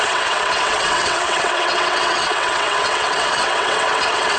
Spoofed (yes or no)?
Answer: yes